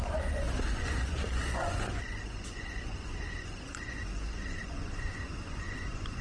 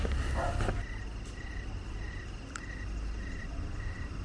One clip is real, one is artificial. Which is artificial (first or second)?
first